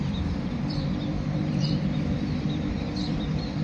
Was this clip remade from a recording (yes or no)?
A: yes